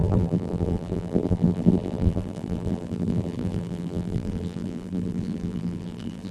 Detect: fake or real fake